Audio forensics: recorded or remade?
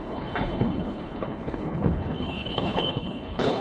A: remade